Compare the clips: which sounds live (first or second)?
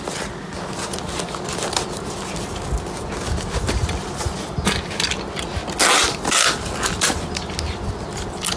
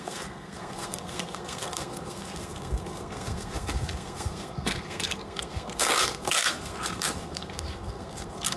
first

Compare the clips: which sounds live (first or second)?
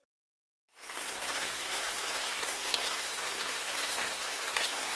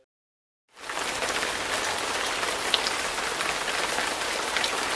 second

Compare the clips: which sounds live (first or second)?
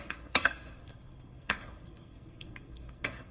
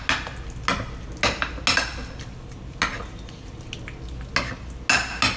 second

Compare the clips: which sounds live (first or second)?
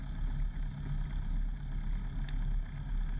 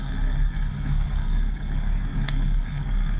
first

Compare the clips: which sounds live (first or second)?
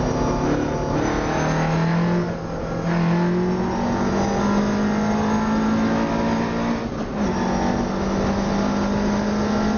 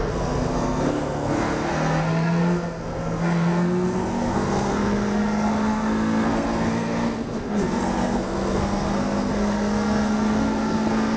first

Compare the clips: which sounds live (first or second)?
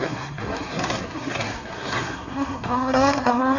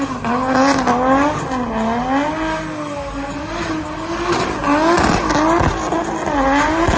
second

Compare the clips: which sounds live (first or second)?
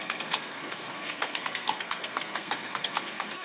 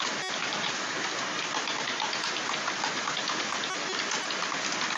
second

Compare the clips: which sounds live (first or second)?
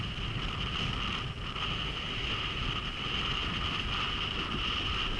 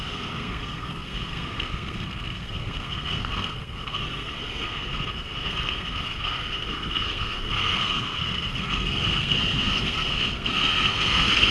first